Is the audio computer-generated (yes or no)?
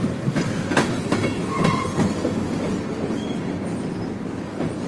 no